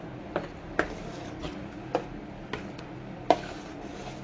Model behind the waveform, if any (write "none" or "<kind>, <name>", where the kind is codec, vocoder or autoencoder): none